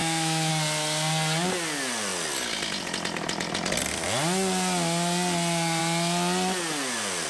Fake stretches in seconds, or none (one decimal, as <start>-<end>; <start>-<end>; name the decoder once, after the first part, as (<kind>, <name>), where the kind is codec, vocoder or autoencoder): 0.0-0.5 (autoencoder, DAC-VAE)